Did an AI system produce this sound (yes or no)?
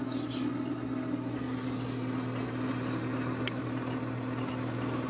no